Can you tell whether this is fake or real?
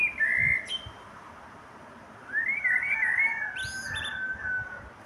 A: real